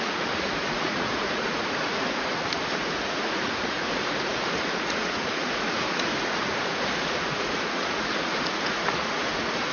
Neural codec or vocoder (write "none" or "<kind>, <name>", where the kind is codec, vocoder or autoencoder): vocoder, Vocos